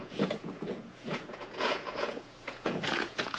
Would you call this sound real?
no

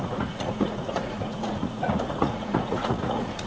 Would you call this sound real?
no